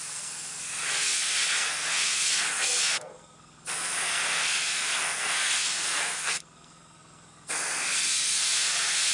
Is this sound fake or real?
fake